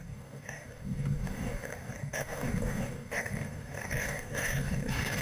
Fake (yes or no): yes